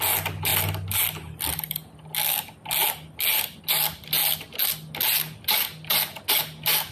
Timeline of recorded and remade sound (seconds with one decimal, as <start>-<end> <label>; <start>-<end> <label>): 0.0-6.9 recorded